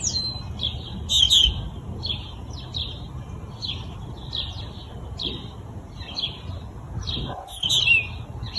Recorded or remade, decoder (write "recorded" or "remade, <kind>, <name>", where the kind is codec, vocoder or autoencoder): recorded